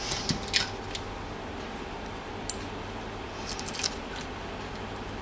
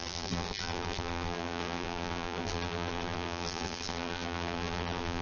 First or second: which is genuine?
first